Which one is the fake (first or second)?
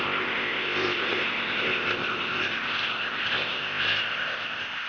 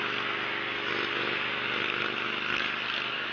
first